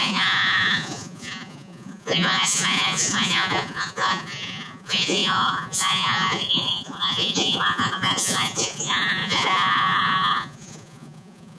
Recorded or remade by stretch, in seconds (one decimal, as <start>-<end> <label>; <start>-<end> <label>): 0.0-11.6 remade